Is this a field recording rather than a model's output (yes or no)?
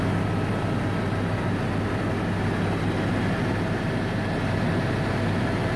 yes